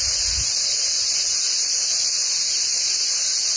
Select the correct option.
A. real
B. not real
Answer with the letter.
A